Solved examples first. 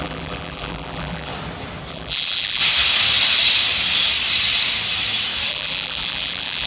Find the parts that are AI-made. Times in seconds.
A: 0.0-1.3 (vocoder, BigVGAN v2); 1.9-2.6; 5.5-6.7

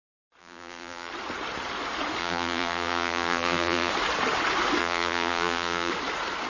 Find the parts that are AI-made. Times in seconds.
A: 0.4-1.1 (vocoder, BigVGAN v2); 2.2-3.9; 4.8-5.9

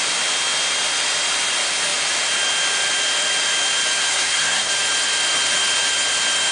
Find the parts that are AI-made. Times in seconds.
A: 4.1-4.7 (codec, SNAC)

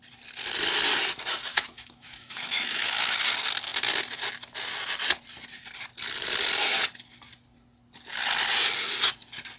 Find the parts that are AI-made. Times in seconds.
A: 1.5-3.2 (autoencoder, DAC-VAE)

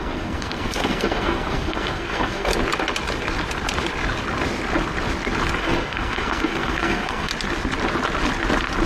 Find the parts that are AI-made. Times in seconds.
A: 0.0-2.5 (codec, SNAC); 5.6-7.3

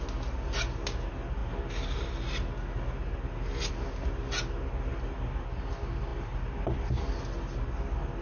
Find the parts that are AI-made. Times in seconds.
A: none

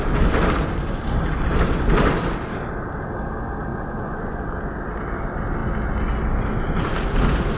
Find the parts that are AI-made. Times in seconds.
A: 3.7-4.4 (vocoder, Vocos)

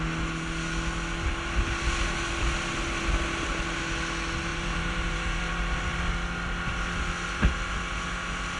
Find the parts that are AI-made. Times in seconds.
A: 4.5-5.5 (vocoder, BigVGAN v2)